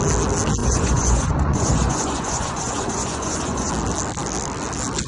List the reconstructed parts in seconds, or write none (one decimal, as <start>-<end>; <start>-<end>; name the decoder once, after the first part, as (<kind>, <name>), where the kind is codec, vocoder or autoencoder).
0.6-3.7 (vocoder, Vocos)